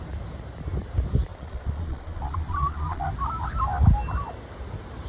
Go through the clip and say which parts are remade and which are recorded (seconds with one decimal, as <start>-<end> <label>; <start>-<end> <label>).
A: 0.0-1.3 recorded; 1.3-3.1 remade; 3.1-5.1 recorded